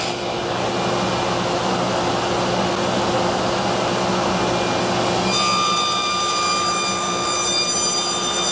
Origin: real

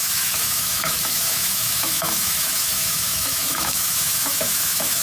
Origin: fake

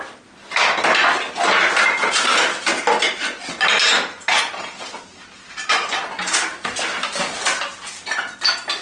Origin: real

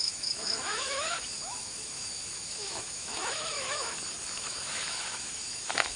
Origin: fake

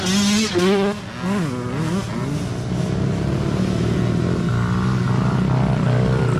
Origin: real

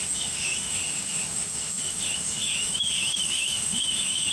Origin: fake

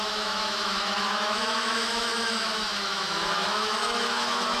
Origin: fake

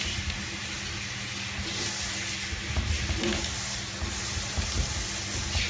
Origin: real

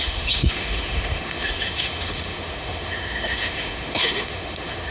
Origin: fake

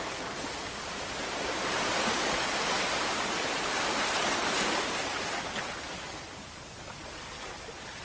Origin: real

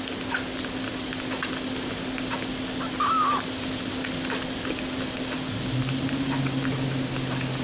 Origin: real